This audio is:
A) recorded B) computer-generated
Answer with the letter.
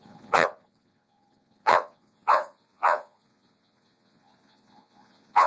B